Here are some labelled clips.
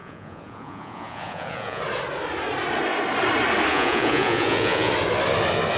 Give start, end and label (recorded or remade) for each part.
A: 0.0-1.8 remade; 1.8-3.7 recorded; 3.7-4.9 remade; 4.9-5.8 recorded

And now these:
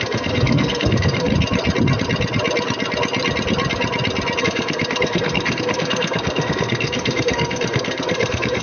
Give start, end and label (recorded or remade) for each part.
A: 0.0-1.3 remade; 1.3-4.4 recorded; 4.4-8.6 remade

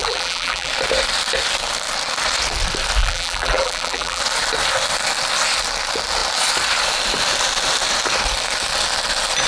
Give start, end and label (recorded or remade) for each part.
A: 0.0-0.7 remade; 0.7-3.0 recorded; 3.0-4.2 remade; 4.2-9.5 recorded

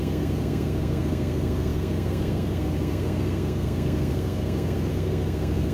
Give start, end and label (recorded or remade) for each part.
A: 0.0-5.7 remade